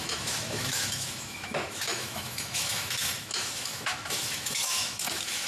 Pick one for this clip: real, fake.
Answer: fake